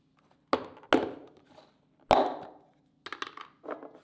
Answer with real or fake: real